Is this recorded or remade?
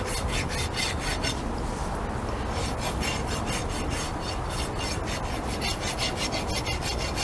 recorded